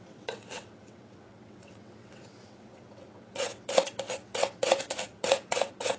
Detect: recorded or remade remade